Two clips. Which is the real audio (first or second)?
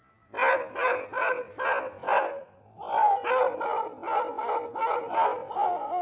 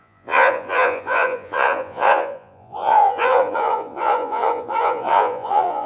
first